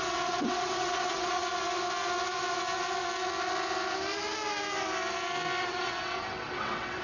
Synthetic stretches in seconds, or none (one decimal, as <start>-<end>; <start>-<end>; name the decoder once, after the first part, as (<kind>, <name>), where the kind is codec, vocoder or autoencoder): 0.0-1.4 (vocoder, WaveNeXt); 5.6-7.0